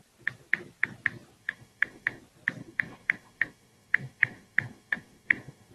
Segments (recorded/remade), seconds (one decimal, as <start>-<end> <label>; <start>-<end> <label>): 0.0-1.4 recorded; 1.4-2.2 remade; 2.2-2.6 recorded; 2.6-5.7 remade